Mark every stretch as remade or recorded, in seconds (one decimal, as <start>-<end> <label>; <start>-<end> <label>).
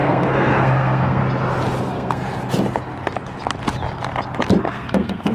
0.0-1.2 remade; 1.2-1.8 recorded; 1.8-2.2 remade; 2.2-4.6 recorded; 4.6-5.3 remade